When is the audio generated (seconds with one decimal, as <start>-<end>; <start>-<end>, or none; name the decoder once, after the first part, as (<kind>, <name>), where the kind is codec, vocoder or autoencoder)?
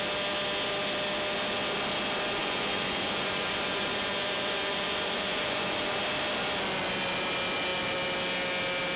2.4-6.0 (vocoder, Vocos)